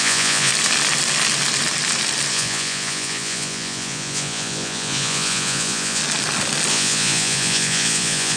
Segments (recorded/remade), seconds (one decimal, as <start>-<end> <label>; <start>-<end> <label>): 0.0-0.5 remade; 0.5-2.3 recorded; 2.3-6.0 remade; 6.0-6.7 recorded; 6.7-8.4 remade

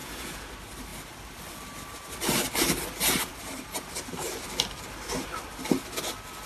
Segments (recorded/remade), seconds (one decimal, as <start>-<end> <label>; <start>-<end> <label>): 0.0-0.5 remade; 0.5-6.5 recorded